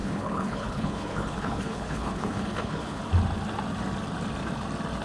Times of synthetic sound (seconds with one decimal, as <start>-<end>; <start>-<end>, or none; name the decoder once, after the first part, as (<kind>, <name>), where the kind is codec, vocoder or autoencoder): 0.0-3.0 (codec, HILCodec)